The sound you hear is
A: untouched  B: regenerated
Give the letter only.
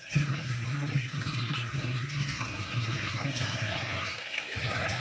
B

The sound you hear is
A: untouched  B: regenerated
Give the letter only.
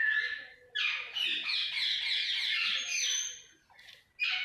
A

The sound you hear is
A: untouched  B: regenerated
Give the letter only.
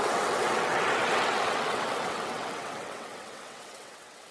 B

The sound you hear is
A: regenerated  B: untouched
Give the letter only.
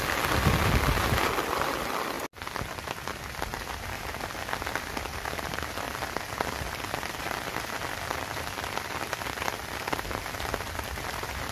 B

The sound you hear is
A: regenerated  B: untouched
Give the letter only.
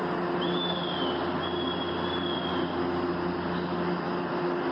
B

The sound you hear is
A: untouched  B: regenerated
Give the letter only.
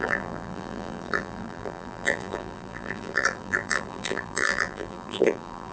B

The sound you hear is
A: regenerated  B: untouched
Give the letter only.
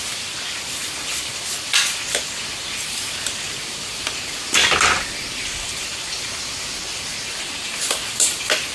B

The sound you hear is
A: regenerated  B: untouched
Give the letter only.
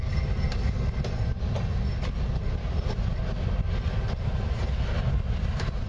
B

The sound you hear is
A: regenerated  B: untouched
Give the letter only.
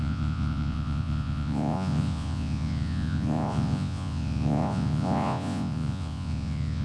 A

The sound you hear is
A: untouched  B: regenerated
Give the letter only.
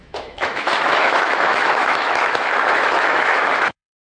B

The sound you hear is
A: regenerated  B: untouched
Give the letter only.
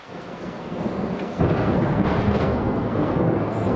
A